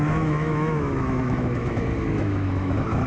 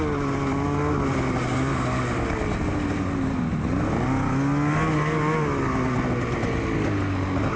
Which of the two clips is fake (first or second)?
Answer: first